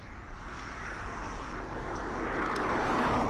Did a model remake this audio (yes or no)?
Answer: yes